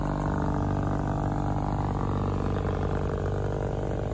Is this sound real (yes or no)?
yes